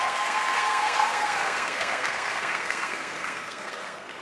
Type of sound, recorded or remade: remade